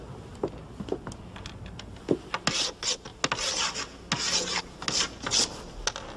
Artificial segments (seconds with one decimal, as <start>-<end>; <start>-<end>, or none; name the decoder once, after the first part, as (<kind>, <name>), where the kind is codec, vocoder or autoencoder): none

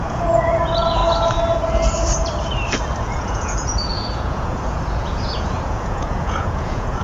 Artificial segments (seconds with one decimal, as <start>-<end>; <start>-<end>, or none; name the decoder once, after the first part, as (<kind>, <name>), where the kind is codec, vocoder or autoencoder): 0.0-1.0 (vocoder, Vocos); 3.0-7.0

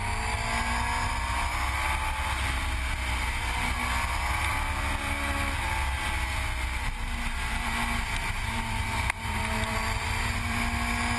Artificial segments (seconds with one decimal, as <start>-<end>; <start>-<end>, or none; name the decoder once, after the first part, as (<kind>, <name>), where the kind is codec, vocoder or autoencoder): 7.5-10.6 (vocoder, BigVGAN v2)

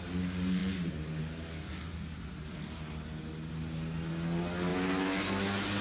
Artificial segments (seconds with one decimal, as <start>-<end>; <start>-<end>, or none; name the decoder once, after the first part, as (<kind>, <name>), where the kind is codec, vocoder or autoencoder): none

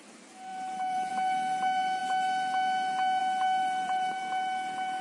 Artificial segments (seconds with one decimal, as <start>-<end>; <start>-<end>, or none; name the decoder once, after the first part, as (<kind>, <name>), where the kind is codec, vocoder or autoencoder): 0.5-1.1 (vocoder, BigVGAN v2); 3.6-4.2

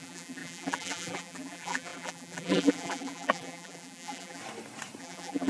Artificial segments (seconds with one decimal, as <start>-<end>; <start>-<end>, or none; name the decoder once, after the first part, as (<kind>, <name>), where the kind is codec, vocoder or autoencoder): 0.0-4.4 (vocoder, BigVGAN v2); 5.0-5.5

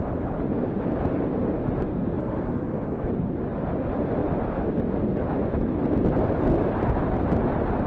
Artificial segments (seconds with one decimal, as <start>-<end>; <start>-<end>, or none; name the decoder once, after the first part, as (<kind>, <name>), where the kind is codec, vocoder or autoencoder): 1.9-3.1 (codec, SNAC)

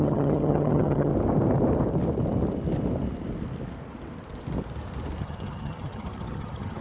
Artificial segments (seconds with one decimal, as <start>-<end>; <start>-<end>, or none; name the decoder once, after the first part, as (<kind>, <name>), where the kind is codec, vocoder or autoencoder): 0.0-1.1 (vocoder, HiFi-GAN); 5.2-6.8